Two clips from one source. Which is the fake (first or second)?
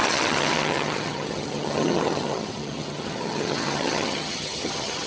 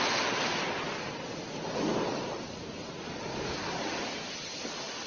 first